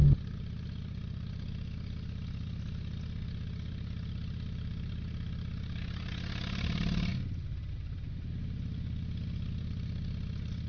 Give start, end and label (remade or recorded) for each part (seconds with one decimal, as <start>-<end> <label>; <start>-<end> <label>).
0.0-10.7 recorded